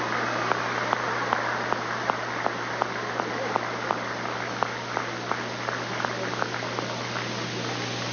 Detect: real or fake real